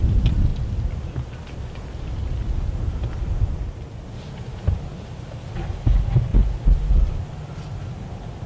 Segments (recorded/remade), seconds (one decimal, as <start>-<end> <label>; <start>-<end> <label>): 0.0-8.5 recorded